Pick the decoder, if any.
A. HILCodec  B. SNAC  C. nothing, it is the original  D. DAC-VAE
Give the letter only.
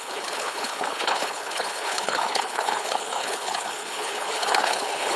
A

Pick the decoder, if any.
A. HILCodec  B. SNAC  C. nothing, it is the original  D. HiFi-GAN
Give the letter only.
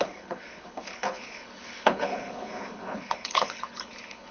A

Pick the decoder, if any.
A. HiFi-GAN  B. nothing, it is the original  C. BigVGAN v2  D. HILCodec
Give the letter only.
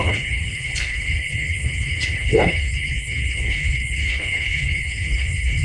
D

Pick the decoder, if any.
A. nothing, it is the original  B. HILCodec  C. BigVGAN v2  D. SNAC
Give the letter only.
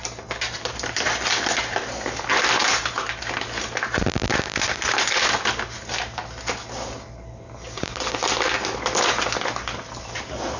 A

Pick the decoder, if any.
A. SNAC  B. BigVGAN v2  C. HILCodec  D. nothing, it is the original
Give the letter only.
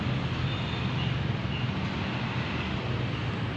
D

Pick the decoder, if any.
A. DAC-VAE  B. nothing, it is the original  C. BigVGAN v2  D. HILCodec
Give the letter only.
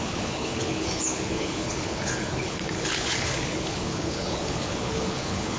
D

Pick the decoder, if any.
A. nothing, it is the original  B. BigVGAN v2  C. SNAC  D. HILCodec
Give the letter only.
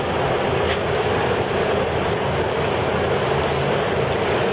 A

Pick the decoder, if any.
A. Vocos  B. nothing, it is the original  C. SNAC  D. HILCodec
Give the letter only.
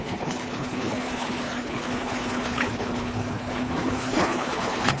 D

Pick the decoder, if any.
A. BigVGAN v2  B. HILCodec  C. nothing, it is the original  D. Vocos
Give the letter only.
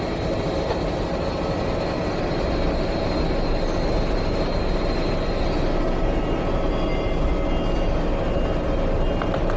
C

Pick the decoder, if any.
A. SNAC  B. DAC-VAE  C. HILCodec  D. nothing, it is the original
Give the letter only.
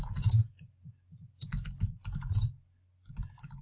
D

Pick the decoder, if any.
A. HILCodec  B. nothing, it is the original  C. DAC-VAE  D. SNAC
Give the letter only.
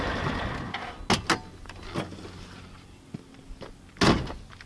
B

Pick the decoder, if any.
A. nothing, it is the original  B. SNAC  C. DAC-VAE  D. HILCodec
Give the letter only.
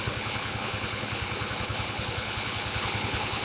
D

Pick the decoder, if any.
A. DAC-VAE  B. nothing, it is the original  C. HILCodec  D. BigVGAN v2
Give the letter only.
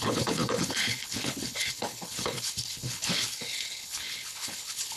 C